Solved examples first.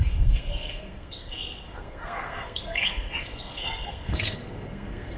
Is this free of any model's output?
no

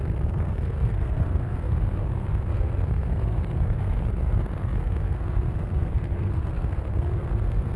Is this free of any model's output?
no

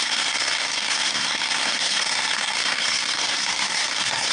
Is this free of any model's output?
no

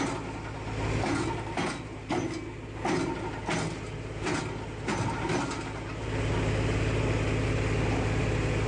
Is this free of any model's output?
yes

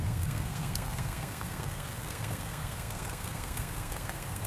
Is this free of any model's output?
no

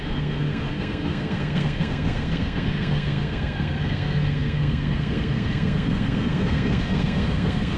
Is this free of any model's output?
no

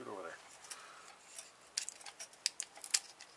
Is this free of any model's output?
yes